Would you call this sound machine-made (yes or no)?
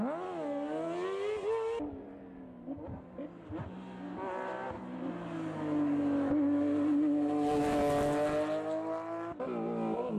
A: no